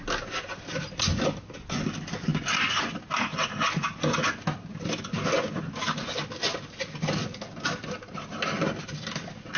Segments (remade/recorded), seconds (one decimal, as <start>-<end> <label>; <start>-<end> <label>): 0.0-9.6 recorded